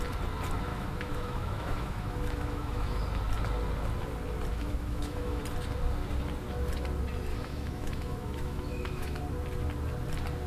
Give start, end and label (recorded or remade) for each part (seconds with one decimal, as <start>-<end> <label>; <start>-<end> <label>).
0.0-0.7 recorded; 0.7-3.0 remade; 3.0-4.5 recorded; 4.5-5.4 remade; 5.4-7.3 recorded; 7.3-9.2 remade; 9.2-10.5 recorded